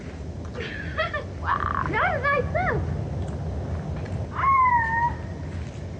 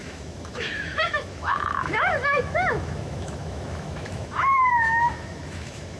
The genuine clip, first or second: first